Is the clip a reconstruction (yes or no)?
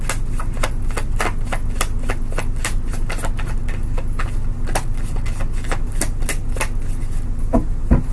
no